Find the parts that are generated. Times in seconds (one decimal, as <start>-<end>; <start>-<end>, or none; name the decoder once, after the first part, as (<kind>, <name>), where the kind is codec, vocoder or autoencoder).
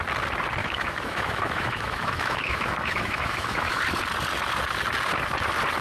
0.6-3.8 (autoencoder, DAC-VAE)